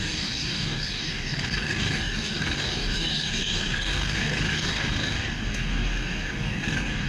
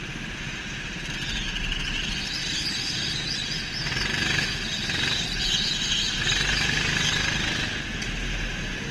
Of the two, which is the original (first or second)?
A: second